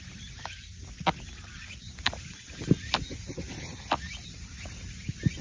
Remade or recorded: recorded